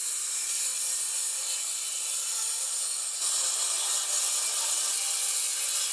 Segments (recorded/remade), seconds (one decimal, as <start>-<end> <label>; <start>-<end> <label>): 0.0-5.9 recorded